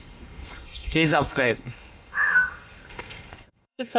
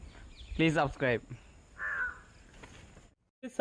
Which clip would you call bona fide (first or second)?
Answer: second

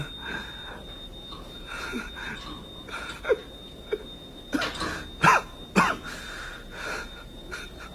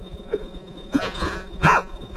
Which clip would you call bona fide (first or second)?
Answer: first